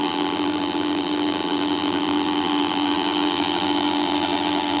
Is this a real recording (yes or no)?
no